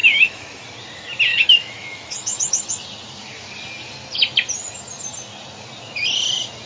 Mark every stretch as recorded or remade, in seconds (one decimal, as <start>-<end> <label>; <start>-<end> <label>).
0.0-0.6 remade; 0.6-1.3 recorded; 1.3-2.7 remade; 2.7-6.7 recorded